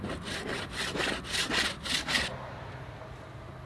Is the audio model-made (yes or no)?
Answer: no